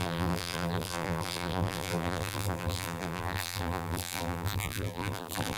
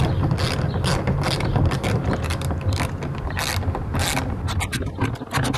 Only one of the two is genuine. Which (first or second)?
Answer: second